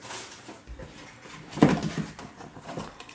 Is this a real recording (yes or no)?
no